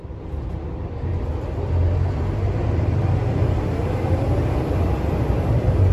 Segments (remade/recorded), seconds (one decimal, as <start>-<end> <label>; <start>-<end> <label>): 0.0-5.9 recorded